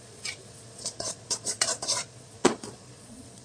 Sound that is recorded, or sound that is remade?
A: remade